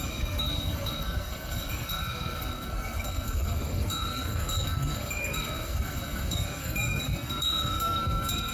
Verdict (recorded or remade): remade